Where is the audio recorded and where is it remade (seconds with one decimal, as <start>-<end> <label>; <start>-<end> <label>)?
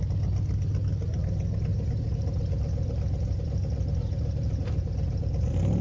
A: 0.0-1.7 recorded; 1.7-5.2 remade; 5.2-5.8 recorded